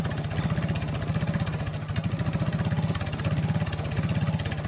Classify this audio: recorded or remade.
recorded